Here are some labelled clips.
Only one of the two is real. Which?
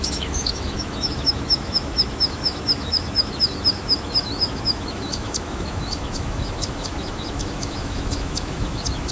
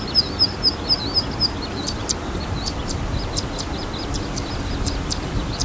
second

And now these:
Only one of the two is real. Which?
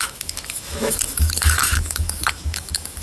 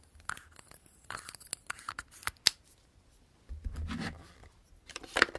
second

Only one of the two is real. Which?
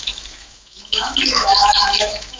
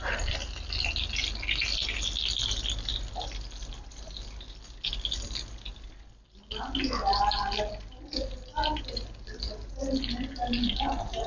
second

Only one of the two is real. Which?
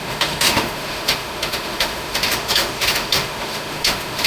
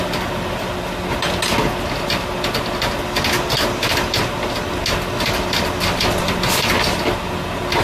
second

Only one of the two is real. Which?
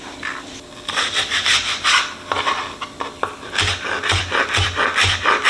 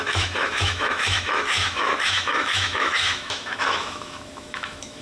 first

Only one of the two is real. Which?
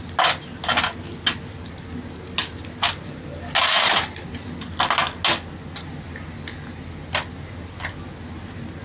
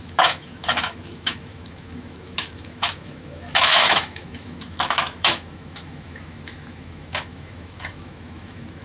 first